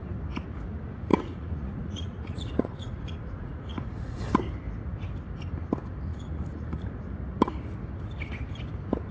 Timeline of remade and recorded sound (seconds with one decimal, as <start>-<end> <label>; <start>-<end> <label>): 0.0-1.1 recorded; 1.1-4.2 remade; 4.2-6.1 recorded; 6.1-6.9 remade; 6.9-9.1 recorded